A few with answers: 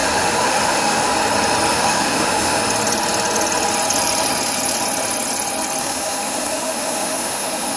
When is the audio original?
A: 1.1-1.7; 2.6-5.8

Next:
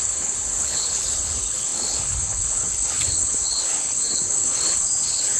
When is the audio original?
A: none

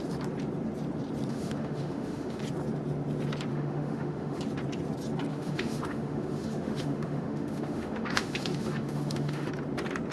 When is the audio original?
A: 0.0-1.3; 2.4-3.5; 4.4-5.3; 9.5-10.1

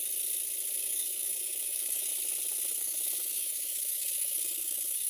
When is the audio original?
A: 0.0-0.8; 2.1-2.8

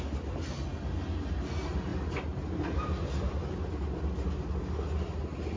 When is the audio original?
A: 0.0-5.6

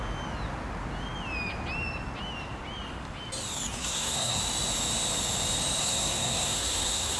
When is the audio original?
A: 0.0-3.8; 4.4-5.8

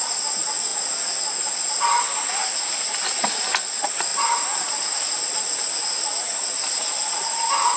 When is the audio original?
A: 0.7-1.4

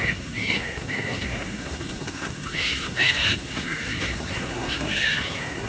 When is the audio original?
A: none